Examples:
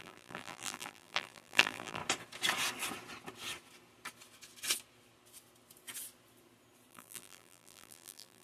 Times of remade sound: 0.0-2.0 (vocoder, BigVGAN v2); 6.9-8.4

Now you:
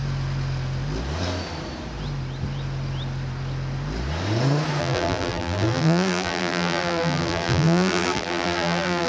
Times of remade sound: 4.8-9.1 (vocoder, BigVGAN v2)

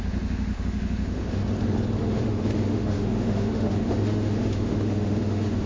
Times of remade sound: 0.0-1.4 (autoencoder, DAC-VAE); 2.0-5.7

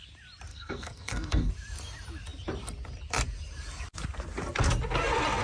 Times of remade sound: 0.5-1.5 (codec, SNAC)

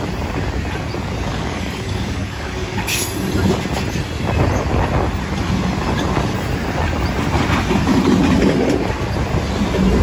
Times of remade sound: 1.3-3.0 (codec, DAC)